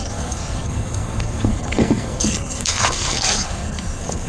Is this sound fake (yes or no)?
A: yes